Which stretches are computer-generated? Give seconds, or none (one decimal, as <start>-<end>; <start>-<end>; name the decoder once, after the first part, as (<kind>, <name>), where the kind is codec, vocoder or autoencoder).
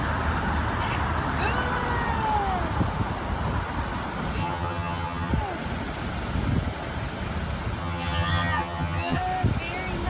4.4-5.3 (vocoder, HiFi-GAN); 7.8-9.2